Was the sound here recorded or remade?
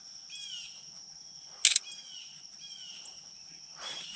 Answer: recorded